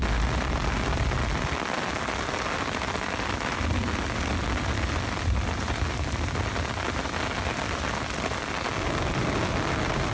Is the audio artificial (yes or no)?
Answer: no